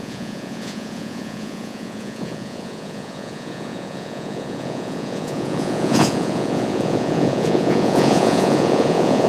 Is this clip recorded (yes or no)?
no